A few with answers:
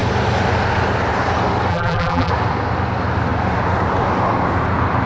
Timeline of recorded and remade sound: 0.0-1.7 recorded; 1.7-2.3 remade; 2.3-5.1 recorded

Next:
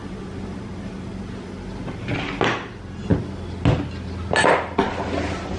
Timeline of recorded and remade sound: 0.0-5.6 recorded

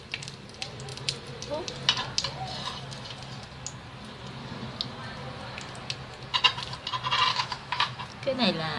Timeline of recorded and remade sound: 0.0-7.3 recorded; 7.3-8.0 remade; 8.0-8.8 recorded

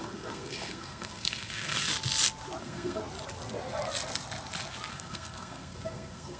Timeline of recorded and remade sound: 0.0-1.9 remade; 1.9-2.6 recorded; 2.6-3.0 remade; 3.0-4.9 recorded; 4.9-6.4 remade

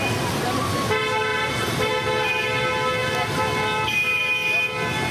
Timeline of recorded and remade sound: 0.0-1.3 recorded; 1.3-1.9 remade; 1.9-3.0 recorded; 3.0-4.2 remade; 4.2-5.1 recorded

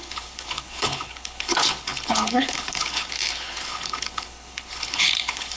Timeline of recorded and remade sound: 0.0-5.6 remade

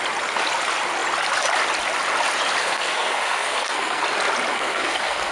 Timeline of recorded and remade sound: 0.0-2.6 recorded; 2.6-4.0 remade; 4.0-4.5 recorded; 4.5-5.3 remade